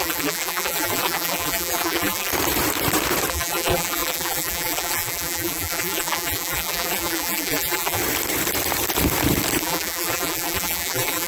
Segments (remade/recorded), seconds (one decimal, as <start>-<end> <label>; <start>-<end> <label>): 0.0-2.3 remade; 2.3-3.3 recorded; 3.3-8.0 remade; 8.0-9.6 recorded; 9.6-11.3 remade